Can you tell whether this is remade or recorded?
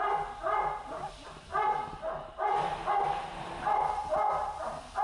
recorded